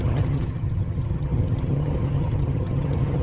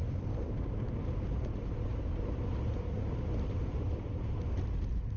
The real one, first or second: second